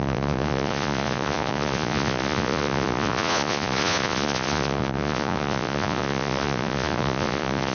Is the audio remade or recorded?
remade